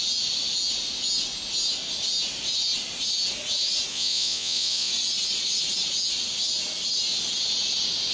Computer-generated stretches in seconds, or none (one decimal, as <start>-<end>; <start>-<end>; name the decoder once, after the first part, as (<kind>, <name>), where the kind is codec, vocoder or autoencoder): 3.9-4.9 (vocoder, Vocos)